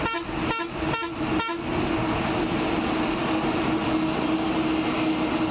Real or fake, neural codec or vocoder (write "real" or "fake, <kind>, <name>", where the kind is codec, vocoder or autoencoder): real